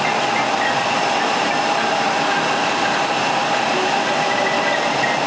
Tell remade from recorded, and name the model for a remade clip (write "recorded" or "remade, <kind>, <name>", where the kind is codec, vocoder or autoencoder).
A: recorded